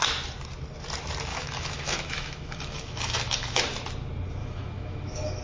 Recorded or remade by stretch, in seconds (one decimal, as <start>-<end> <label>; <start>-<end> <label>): 0.0-1.3 recorded; 1.3-3.6 remade; 3.6-4.4 recorded; 4.4-5.4 remade